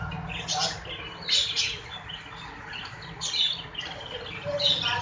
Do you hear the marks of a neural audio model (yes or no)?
no